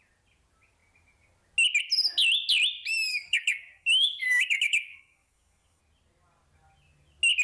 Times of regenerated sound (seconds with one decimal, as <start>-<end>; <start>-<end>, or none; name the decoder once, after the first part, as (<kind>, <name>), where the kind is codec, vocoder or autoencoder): 3.1-5.8 (codec, DAC)